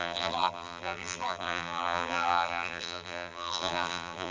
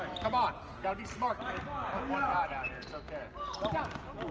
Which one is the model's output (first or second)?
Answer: first